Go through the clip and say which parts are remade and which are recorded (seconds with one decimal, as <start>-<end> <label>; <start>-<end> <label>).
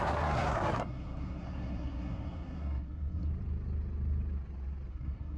0.0-3.3 remade; 3.3-4.9 recorded; 4.9-5.4 remade